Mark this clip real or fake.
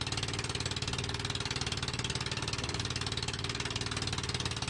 real